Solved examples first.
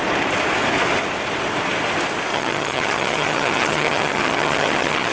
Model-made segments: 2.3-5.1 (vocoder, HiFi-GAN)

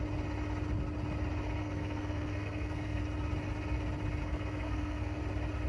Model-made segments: 1.6-3.0 (codec, SNAC); 4.2-5.2

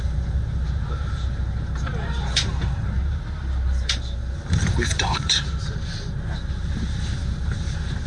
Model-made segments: 0.0-8.1 (vocoder, BigVGAN v2)